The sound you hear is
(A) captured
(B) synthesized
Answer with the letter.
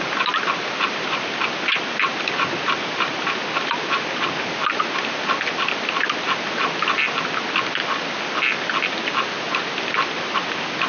A